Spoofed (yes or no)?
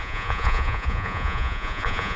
yes